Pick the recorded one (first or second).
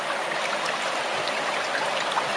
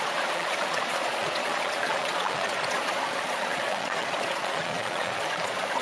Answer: first